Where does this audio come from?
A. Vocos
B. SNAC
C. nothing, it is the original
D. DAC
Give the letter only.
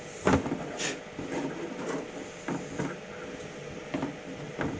C